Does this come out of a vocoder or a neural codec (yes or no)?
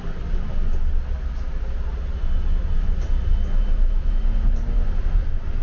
no